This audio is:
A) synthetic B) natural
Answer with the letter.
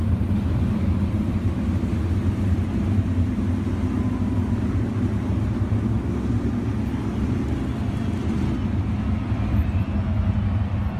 B